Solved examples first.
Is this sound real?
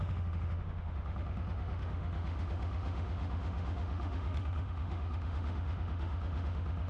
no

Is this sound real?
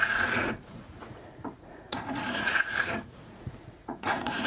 no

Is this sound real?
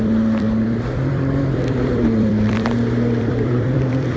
no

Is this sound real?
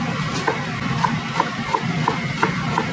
yes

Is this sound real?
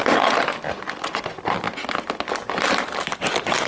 yes